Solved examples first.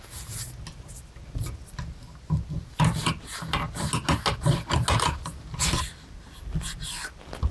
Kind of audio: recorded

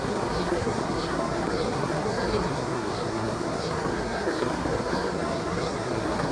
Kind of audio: remade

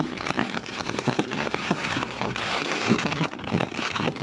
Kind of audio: remade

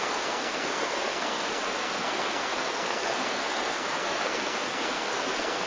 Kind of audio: remade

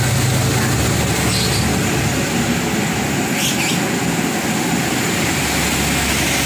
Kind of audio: recorded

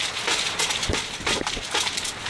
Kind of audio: recorded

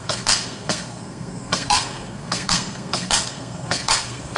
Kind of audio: remade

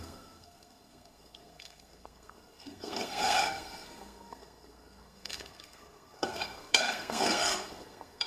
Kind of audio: remade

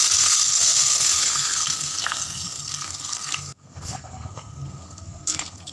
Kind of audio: remade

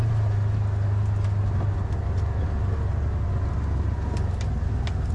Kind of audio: recorded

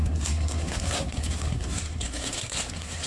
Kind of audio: remade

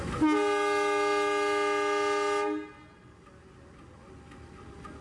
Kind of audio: recorded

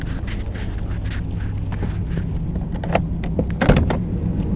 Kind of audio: recorded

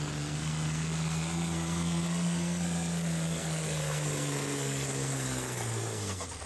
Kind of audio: remade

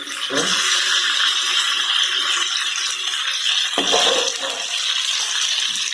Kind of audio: recorded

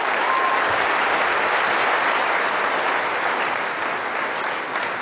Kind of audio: recorded